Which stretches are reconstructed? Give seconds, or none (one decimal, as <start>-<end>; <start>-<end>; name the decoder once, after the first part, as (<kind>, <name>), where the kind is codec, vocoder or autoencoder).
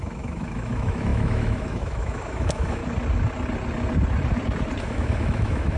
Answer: 0.0-2.8 (autoencoder, DAC-VAE); 4.8-5.8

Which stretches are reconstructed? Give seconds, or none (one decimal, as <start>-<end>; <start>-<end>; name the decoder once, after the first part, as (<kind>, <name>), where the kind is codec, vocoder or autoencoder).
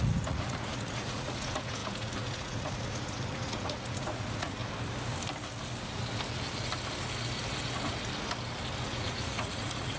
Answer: 0.0-4.6 (vocoder, Vocos); 8.8-10.0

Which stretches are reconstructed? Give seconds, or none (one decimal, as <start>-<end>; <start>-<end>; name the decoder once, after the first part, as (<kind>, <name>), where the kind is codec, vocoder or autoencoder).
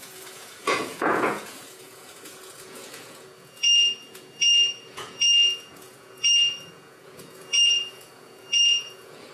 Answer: 0.0-9.3 (vocoder, Vocos)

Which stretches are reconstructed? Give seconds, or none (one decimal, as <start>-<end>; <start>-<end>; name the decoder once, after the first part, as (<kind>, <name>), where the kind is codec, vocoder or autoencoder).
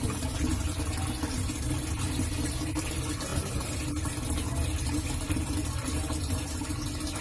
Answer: none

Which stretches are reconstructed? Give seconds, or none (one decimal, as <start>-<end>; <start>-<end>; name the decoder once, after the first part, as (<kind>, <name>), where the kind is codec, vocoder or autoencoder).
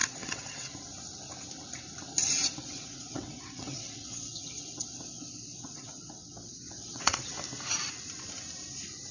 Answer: 0.0-0.7 (vocoder, WaveNeXt); 2.6-7.3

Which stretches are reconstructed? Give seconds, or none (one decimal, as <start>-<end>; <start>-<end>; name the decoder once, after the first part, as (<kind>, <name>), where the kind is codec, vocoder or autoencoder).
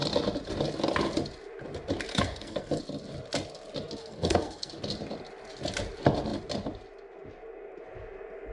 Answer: 2.1-2.8 (codec, SNAC); 4.0-4.7